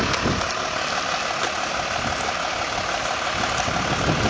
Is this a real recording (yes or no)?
yes